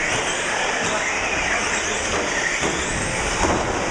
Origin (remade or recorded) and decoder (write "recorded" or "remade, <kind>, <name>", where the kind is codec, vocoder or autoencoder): recorded